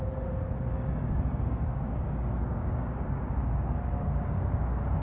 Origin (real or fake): fake